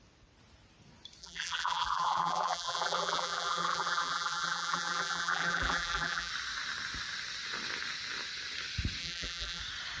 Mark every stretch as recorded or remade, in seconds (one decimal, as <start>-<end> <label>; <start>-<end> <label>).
0.0-1.2 recorded; 1.2-6.3 remade; 6.3-9.0 recorded; 9.0-9.6 remade; 9.6-10.0 recorded

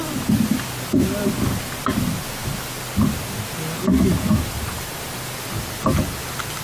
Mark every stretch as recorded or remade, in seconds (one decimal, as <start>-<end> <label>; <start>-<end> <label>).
0.0-2.4 remade; 2.4-6.6 recorded

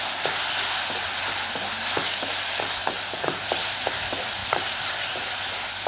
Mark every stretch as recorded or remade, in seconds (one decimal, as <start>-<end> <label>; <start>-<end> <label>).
0.0-2.8 recorded; 2.8-3.5 remade; 3.5-4.4 recorded; 4.4-5.3 remade; 5.3-5.9 recorded

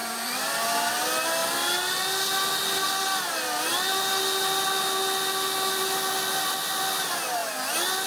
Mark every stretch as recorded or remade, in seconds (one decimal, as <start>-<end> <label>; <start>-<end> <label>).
0.0-0.9 remade; 0.9-8.1 recorded

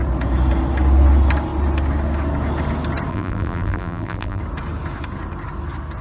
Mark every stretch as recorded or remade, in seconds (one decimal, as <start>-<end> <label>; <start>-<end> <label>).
0.0-3.1 recorded; 3.1-4.4 remade; 4.4-6.0 recorded

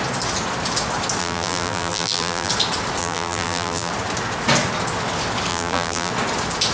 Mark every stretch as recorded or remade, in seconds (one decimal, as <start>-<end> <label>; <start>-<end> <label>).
0.0-1.2 recorded; 1.2-2.5 remade; 2.5-3.0 recorded; 3.0-3.9 remade; 3.9-5.5 recorded; 5.5-6.1 remade; 6.1-6.7 recorded